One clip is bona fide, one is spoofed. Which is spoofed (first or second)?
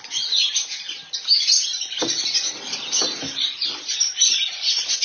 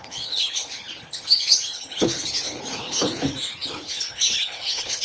second